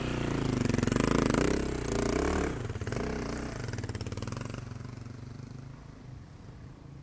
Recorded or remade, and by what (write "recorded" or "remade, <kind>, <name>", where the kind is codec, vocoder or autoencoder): recorded